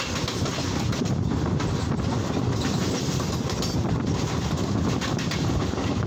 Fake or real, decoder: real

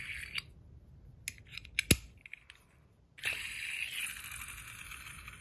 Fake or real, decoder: real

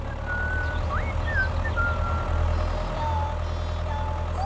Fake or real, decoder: real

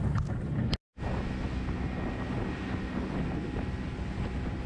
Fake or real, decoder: real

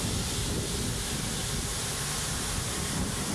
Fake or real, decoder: real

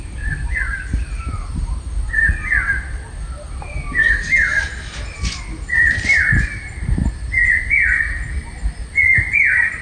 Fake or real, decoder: real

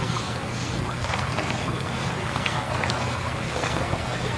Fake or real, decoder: fake, codec, SNAC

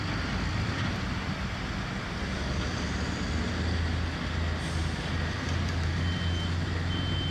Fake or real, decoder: real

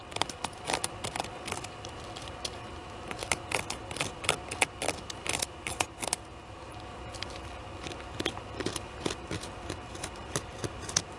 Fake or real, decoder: real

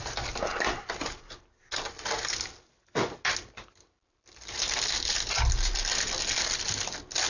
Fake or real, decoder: real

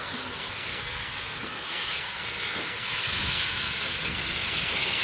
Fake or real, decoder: fake, codec, SNAC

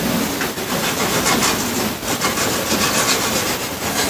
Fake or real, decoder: real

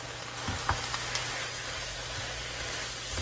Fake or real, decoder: real